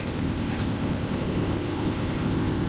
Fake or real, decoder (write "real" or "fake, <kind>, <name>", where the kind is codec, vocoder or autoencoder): fake, codec, ZipCodec